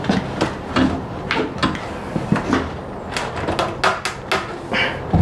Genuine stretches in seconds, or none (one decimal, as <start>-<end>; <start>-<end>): 0.0-5.2